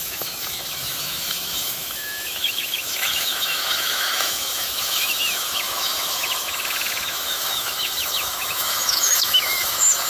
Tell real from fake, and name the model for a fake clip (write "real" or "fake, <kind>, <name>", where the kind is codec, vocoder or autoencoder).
fake, autoencoder, DAC-VAE